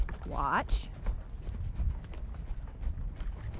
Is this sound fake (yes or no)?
no